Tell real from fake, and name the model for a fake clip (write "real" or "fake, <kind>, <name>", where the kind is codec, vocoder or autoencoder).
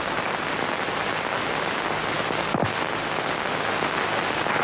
real